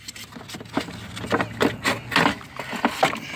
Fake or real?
real